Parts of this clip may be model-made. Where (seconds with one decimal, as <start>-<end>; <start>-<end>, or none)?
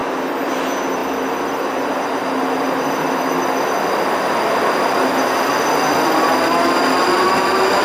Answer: none